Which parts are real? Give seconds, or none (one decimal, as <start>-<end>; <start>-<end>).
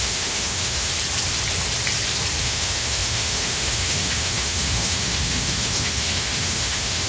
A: 0.9-2.4